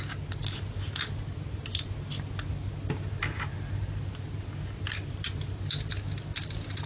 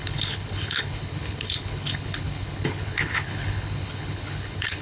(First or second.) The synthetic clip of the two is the second